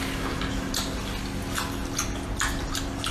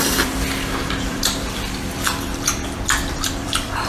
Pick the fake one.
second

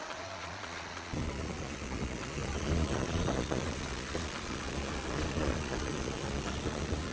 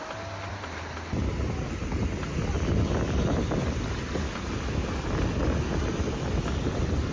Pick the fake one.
first